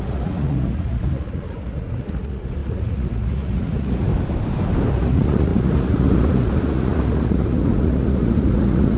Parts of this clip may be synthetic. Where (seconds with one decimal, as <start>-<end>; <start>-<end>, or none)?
0.0-4.1; 4.9-9.0